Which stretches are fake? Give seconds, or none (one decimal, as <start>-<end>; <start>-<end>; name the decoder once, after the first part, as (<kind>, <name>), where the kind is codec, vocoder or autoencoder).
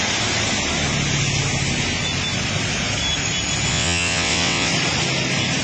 3.7-4.7 (vocoder, WaveNeXt)